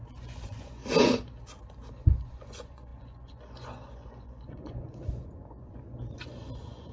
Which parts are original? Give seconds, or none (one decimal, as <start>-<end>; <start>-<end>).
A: 0.8-1.9